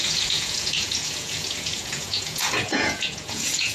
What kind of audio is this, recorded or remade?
remade